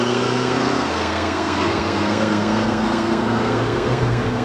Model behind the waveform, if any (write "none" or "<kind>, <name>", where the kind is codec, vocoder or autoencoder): codec, SNAC